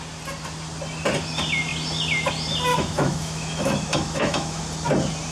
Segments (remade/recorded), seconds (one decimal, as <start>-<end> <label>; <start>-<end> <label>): 0.0-2.7 recorded; 2.7-4.6 remade; 4.6-5.3 recorded

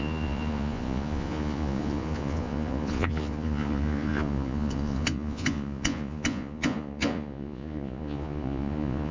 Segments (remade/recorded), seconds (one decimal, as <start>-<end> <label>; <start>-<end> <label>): 0.0-9.1 remade

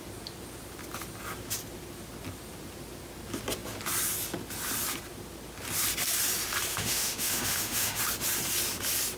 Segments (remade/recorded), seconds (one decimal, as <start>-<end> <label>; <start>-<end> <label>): 0.0-6.7 recorded; 6.7-8.0 remade; 8.0-9.2 recorded

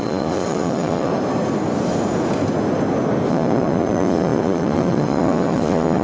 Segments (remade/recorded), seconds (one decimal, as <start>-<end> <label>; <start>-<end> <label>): 0.0-1.1 remade; 1.1-3.3 recorded; 3.3-6.0 remade

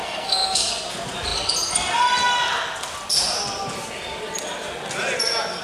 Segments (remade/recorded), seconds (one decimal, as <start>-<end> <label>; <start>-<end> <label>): 0.0-0.7 remade; 0.7-5.6 recorded

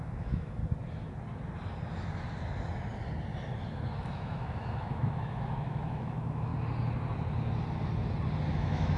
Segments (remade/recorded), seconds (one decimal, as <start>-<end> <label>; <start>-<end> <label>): 0.0-0.6 remade; 0.6-4.0 recorded; 4.0-6.5 remade; 6.5-8.5 recorded; 8.5-9.0 remade

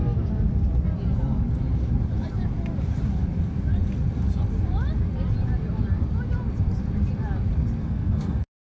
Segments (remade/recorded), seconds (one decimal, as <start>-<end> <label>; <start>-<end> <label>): 0.0-7.8 recorded; 7.8-8.7 remade